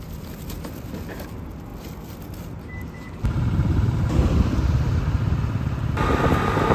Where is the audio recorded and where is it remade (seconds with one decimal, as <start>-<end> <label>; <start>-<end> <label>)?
0.0-6.7 recorded